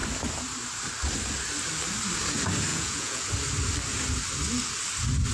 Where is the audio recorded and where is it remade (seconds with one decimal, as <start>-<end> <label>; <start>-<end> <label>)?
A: 0.0-2.7 recorded; 2.7-3.3 remade; 3.3-5.3 recorded